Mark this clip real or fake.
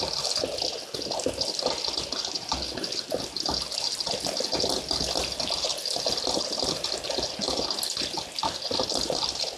real